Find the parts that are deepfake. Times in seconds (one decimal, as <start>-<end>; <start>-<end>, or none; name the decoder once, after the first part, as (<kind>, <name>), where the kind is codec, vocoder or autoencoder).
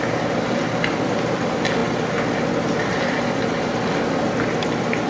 0.0-1.8 (vocoder, BigVGAN v2)